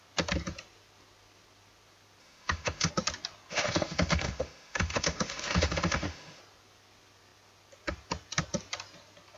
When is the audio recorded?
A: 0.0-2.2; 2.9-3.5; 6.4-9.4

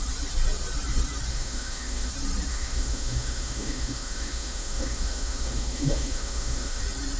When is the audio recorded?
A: 0.0-1.3; 2.1-2.5; 6.8-7.2

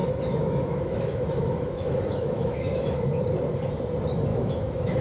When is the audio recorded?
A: 3.0-4.3

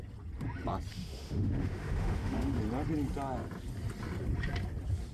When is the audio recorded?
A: 0.0-0.9; 2.6-5.1

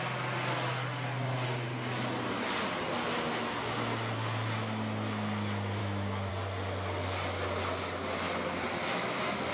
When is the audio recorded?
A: 0.0-5.8; 6.3-8.8